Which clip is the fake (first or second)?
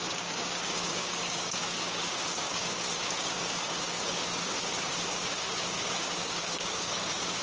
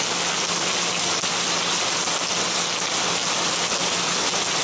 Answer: first